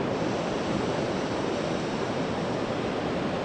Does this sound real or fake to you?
fake